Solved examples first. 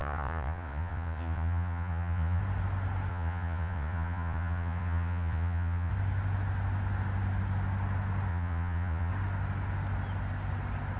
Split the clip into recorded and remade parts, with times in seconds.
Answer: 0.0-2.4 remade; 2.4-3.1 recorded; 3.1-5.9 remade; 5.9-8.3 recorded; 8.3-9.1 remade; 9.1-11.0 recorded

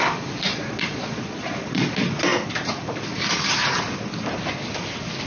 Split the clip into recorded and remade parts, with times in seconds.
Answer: 0.0-0.5 recorded; 0.5-1.9 remade; 1.9-5.3 recorded

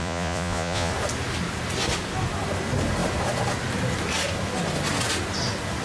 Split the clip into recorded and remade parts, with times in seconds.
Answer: 0.0-0.9 remade; 0.9-5.8 recorded

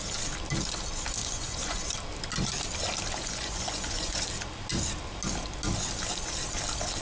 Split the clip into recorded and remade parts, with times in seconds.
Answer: 0.0-1.2 recorded; 1.2-1.8 remade; 1.8-3.2 recorded; 3.2-4.2 remade; 4.2-7.0 recorded